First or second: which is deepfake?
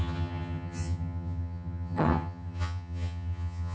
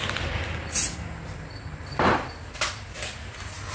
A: first